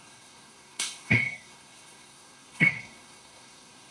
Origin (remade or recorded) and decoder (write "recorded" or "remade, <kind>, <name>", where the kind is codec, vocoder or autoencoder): remade, codec, SNAC